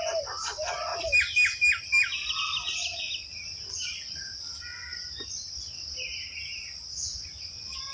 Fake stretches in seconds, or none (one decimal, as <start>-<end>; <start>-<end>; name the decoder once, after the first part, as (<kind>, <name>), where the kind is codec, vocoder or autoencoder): 0.0-0.9 (vocoder, BigVGAN v2); 3.0-7.9